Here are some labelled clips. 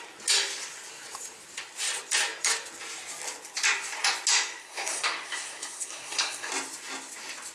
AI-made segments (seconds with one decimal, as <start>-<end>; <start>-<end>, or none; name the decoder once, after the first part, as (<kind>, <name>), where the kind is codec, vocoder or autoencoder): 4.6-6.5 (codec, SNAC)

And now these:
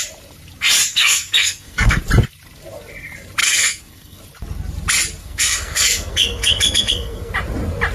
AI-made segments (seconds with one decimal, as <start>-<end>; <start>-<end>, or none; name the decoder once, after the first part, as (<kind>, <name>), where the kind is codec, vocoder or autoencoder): 0.9-2.0 (codec, SNAC); 3.4-4.2; 5.2-7.3

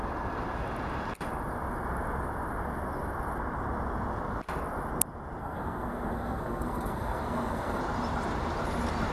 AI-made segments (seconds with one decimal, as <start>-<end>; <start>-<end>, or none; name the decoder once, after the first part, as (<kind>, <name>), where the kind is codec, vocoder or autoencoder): 5.4-7.8 (codec, SNAC)

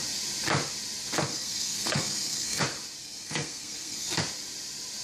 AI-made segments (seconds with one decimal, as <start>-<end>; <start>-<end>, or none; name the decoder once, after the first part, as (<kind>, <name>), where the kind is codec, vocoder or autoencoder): 1.3-2.6 (codec, SNAC); 3.0-4.1